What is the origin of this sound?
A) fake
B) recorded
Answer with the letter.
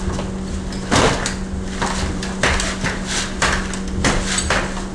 B